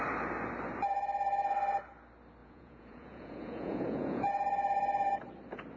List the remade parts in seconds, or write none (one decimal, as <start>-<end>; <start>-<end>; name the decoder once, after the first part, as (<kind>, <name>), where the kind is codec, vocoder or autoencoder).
2.4-4.3 (vocoder, Vocos)